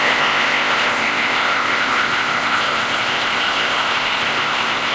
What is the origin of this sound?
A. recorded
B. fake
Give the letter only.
B